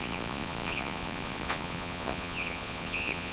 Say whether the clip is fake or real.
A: fake